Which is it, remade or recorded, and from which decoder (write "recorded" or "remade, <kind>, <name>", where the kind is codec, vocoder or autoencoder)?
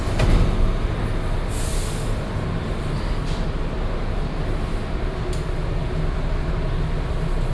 recorded